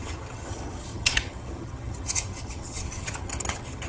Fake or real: fake